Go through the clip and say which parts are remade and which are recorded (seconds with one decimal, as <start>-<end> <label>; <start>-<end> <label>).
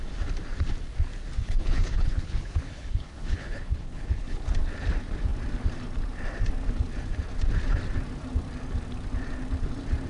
0.0-1.4 recorded; 1.4-4.4 remade; 4.4-10.1 recorded